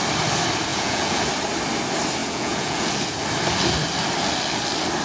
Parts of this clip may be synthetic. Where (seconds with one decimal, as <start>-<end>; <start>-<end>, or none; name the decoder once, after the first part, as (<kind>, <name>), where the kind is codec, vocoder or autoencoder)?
0.7-1.2 (vocoder, Vocos); 2.2-2.9